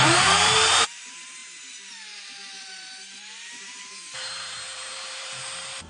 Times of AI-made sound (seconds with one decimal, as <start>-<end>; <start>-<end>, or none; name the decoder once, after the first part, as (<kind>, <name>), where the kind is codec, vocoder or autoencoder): 0.0-5.9 (vocoder, BigVGAN v2)